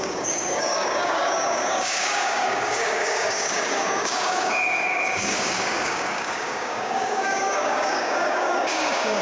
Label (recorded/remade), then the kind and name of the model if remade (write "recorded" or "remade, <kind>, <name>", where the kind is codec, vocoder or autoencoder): remade, codec, DAC